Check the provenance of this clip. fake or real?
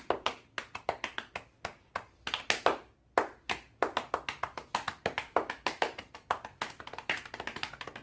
real